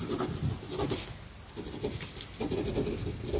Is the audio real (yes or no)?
yes